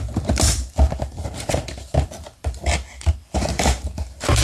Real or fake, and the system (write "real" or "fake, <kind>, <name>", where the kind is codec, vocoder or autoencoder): fake, vocoder, BigVGAN v2